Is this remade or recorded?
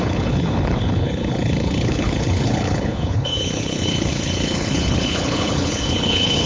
remade